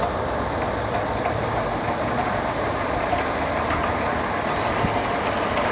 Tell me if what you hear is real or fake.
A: real